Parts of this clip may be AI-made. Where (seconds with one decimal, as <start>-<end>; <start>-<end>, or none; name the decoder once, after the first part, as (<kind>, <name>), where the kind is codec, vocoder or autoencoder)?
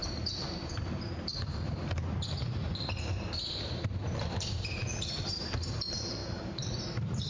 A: 0.0-7.3 (vocoder, BigVGAN v2)